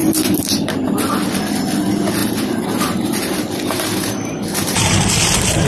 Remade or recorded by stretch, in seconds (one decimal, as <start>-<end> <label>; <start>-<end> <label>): 0.0-0.9 remade; 0.9-2.2 recorded; 2.2-5.7 remade